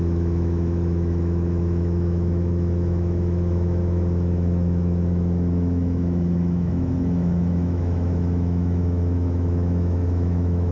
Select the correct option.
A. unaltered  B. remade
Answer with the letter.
B